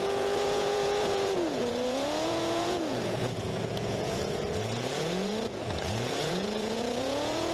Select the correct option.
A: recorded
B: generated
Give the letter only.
B